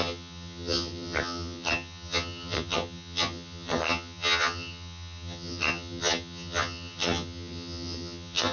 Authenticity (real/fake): fake